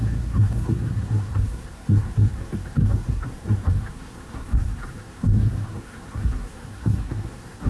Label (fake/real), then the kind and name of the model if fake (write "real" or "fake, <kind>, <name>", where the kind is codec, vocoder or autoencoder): fake, codec, SNAC